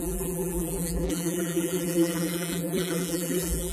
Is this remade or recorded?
remade